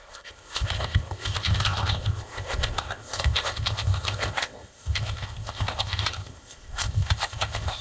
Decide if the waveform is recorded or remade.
remade